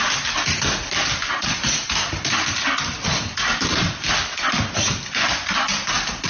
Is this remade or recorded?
recorded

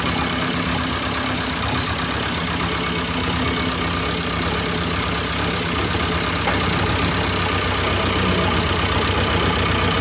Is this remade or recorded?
recorded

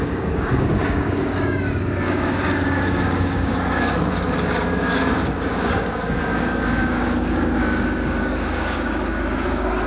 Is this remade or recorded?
remade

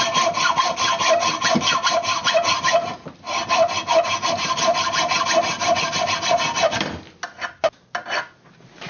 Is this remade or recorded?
recorded